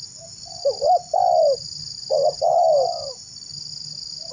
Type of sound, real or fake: real